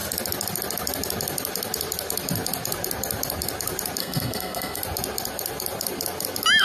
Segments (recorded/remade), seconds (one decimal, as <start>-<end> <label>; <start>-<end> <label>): 0.0-4.0 recorded; 4.0-4.8 remade; 4.8-6.6 recorded